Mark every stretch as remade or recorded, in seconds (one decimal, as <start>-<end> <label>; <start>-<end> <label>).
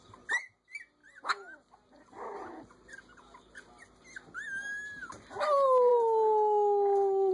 0.0-7.3 recorded